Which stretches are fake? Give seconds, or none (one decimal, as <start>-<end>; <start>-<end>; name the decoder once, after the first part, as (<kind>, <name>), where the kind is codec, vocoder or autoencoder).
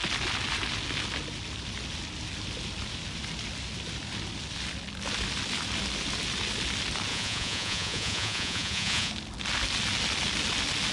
7.1-9.1 (vocoder, Vocos)